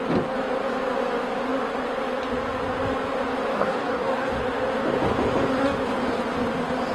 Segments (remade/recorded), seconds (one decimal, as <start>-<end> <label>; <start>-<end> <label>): 0.0-3.5 recorded; 3.5-4.3 remade; 4.3-6.9 recorded